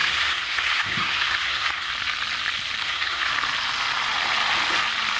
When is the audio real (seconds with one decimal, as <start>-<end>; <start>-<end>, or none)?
1.9-2.8; 3.3-5.2